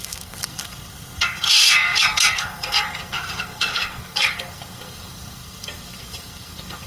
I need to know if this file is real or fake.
fake